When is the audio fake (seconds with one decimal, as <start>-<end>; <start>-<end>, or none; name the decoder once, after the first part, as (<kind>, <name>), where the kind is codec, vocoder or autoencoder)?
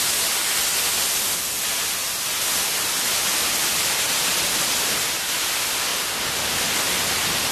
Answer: 5.9-6.4 (vocoder, BigVGAN v2)